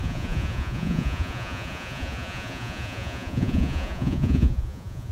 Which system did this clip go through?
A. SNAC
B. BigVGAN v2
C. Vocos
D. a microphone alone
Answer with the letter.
C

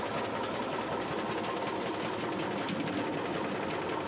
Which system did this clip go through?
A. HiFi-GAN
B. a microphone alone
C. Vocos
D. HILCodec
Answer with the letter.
B